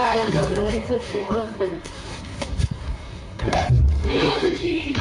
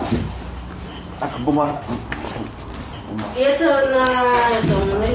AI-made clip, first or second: first